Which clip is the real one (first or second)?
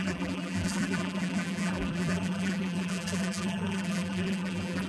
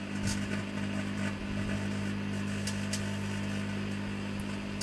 second